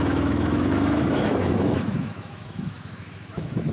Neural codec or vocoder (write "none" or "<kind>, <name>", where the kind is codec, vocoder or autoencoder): autoencoder, DAC-VAE